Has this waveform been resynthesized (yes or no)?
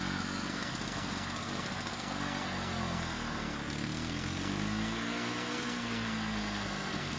yes